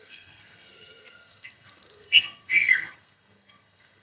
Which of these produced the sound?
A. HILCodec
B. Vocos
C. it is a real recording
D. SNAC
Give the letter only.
D